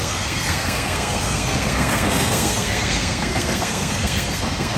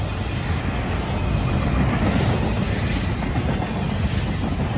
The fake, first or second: first